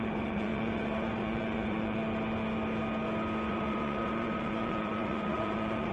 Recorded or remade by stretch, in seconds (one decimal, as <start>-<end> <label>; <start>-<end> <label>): 0.0-2.0 remade; 2.0-3.5 recorded; 3.5-5.9 remade